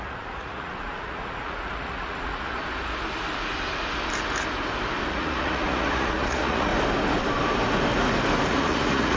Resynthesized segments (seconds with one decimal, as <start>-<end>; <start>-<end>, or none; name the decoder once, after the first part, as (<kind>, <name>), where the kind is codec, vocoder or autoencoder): 0.0-2.6 (vocoder, Vocos); 5.1-6.7; 8.5-9.2